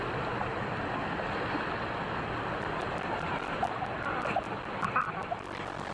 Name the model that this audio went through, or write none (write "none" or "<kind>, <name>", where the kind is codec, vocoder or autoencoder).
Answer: none